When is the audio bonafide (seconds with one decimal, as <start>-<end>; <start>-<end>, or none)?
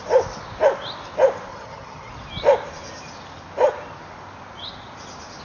0.0-1.5; 2.1-5.4